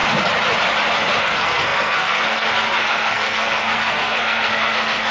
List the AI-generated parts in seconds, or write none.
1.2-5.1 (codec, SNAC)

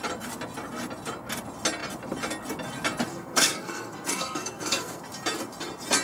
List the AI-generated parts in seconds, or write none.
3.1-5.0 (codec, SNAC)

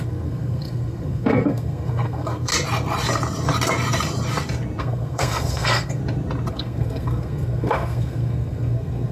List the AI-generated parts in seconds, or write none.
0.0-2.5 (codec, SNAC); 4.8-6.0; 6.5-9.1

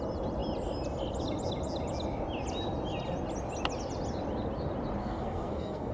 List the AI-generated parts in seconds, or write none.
5.0-5.9 (codec, SNAC)

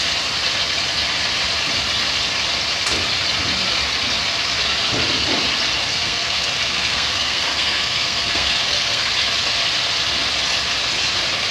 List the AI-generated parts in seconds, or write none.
5.9-9.1 (codec, SNAC)

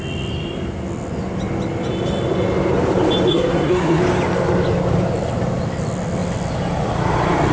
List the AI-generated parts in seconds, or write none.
3.3-4.0 (codec, SNAC)